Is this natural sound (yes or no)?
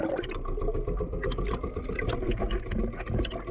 yes